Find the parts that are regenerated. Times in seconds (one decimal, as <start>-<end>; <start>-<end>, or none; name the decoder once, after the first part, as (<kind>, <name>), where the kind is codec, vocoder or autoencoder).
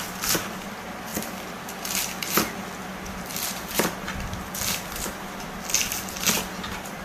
none